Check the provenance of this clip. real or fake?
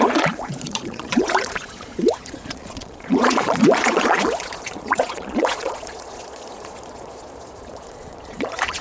fake